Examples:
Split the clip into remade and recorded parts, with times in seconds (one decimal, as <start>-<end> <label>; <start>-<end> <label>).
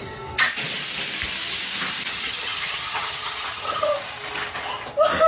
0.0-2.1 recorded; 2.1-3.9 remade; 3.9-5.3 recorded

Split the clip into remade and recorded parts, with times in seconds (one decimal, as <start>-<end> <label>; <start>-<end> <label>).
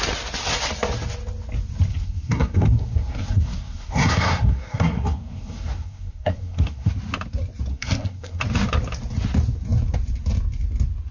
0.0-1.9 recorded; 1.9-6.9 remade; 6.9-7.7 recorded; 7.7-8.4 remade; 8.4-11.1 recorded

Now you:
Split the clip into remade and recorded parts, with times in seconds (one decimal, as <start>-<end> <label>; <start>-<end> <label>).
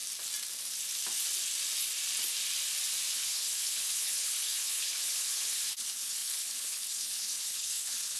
0.0-3.1 recorded; 3.1-8.2 remade